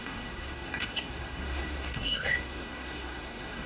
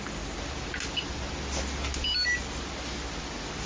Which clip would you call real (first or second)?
second